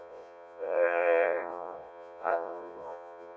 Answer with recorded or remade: remade